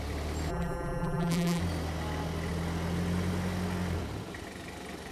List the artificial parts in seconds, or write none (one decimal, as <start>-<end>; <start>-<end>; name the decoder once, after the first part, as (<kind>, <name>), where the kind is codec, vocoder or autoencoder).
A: 0.5-1.6 (vocoder, BigVGAN v2)